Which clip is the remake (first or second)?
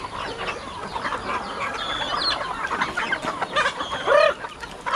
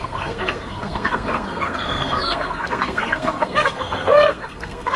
second